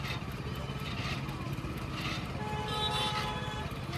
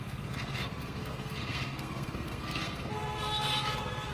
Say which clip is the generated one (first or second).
second